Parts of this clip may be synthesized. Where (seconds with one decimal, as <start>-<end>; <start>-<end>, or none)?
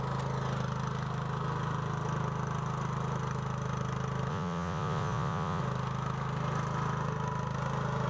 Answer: 4.3-5.6